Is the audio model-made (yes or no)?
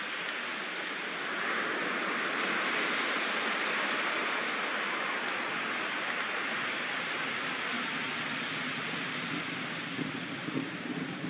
no